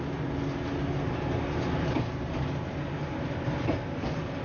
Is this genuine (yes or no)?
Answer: yes